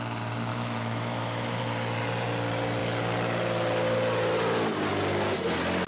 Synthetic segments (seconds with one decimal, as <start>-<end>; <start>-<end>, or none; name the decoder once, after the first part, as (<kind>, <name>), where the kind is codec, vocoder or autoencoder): 0.5-1.6 (autoencoder, DAC-VAE)